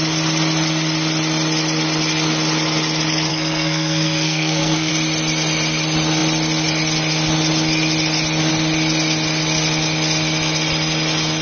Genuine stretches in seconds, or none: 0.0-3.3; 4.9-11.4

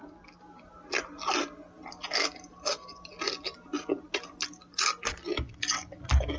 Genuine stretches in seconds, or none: 0.0-6.4

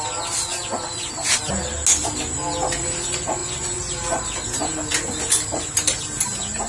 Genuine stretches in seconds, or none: 0.0-6.7

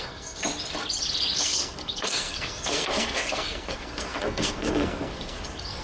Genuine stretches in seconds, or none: 0.4-1.4

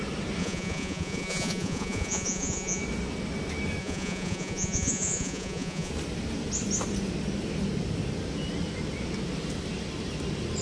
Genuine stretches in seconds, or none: 0.0-0.4; 2.8-3.8; 5.9-10.6